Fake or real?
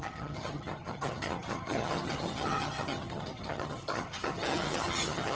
fake